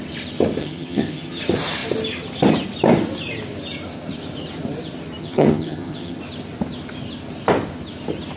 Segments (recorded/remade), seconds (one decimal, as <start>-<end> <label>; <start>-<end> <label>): 0.0-0.6 recorded; 0.6-1.4 remade; 1.4-5.2 recorded; 5.2-6.2 remade; 6.2-8.4 recorded